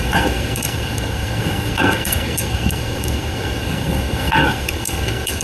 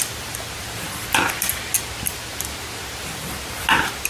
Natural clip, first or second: second